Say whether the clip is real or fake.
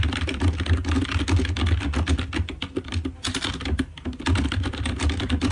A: real